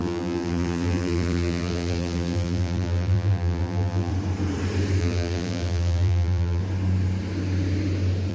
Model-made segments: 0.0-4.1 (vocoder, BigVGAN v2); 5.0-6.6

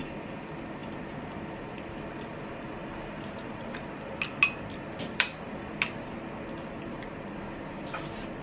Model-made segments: 0.8-1.6 (vocoder, BigVGAN v2)

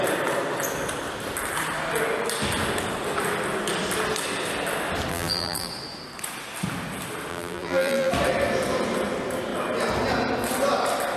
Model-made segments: 5.1-5.7 (vocoder, BigVGAN v2); 7.3-8.1